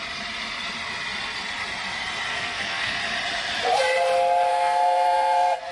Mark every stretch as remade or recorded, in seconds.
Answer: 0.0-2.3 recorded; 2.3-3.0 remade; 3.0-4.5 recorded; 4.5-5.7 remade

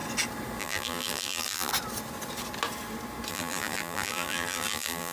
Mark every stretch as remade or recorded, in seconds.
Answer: 0.0-0.6 recorded; 0.6-1.7 remade; 1.7-3.3 recorded; 3.3-5.1 remade

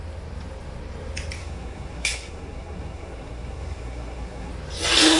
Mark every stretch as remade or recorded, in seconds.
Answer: 0.0-1.4 recorded; 1.4-4.5 remade; 4.5-5.2 recorded

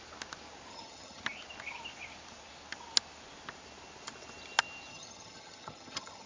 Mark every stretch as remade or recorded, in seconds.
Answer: 0.0-0.7 recorded; 0.7-1.2 remade; 1.2-4.9 recorded; 4.9-6.3 remade

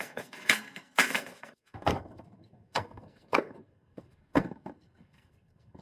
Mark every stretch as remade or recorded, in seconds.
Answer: 0.0-5.8 remade

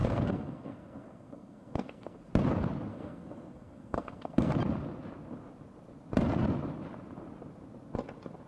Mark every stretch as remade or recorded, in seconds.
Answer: 0.0-2.3 remade; 2.3-2.9 recorded; 2.9-4.5 remade; 4.5-8.5 recorded